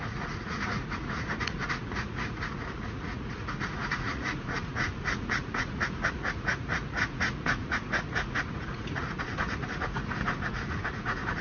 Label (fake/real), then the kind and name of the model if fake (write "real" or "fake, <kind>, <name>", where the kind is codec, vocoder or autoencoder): fake, vocoder, Vocos